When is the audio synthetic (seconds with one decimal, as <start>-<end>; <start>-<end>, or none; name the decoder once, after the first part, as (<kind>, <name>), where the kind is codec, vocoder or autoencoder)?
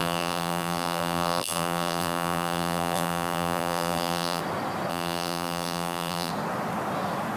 0.0-4.4 (vocoder, BigVGAN v2); 4.9-6.3